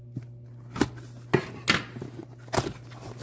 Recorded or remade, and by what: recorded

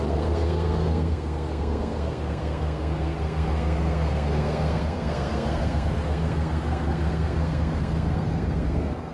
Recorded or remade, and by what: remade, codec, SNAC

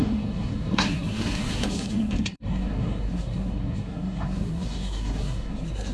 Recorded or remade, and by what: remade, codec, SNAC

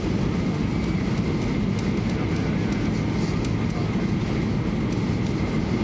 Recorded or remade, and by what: recorded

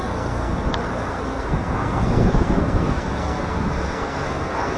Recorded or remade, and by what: remade, codec, SNAC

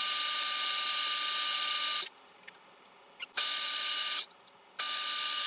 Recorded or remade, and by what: recorded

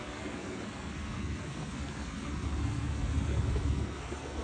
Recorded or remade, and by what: remade, codec, SNAC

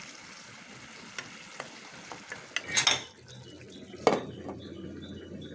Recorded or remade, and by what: recorded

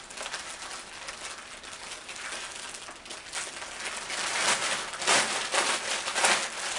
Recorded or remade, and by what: recorded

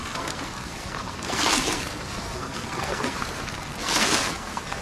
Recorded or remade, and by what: remade, codec, SNAC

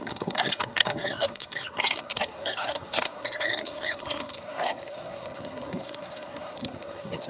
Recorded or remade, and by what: remade, codec, SNAC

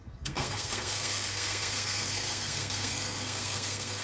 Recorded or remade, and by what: remade, codec, SNAC